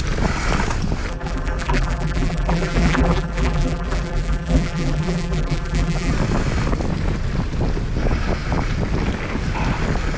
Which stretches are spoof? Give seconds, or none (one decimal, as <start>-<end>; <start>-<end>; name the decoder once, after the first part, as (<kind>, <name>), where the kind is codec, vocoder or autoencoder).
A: 1.1-6.1 (vocoder, BigVGAN v2)